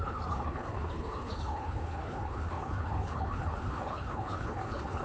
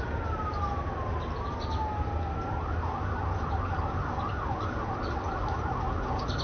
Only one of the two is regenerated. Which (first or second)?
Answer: first